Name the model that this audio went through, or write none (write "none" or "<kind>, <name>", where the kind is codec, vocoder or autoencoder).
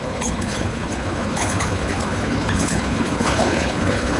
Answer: codec, HILCodec